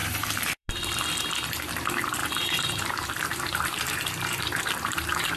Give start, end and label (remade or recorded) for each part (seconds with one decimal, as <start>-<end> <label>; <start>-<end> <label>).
0.0-0.7 remade; 0.7-2.2 recorded; 2.2-5.4 remade